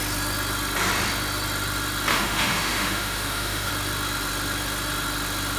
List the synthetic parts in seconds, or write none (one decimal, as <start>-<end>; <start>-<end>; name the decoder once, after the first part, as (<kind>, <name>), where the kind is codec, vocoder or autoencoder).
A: 2.1-3.7 (autoencoder, DAC-VAE)